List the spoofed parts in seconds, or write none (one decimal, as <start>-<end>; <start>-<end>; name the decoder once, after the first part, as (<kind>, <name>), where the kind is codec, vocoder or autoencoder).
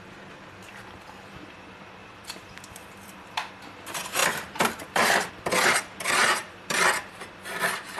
2.0-3.5 (vocoder, BigVGAN v2); 4.2-5.3; 6.4-7.0